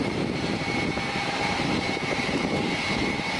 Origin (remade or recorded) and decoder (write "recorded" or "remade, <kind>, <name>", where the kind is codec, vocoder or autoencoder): remade, vocoder, BigVGAN v2